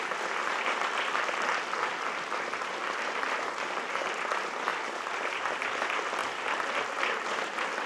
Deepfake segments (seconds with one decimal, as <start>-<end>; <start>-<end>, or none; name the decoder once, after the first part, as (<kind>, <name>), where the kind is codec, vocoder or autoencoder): none